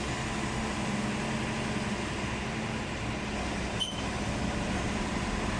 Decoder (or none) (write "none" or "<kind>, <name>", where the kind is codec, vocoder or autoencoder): none